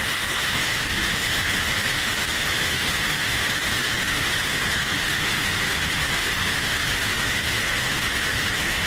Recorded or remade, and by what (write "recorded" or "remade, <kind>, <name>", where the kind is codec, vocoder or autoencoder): remade, autoencoder, DAC-VAE